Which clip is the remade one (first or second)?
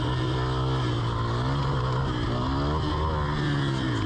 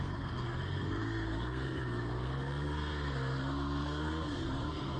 second